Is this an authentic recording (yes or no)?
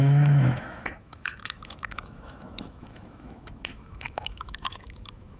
no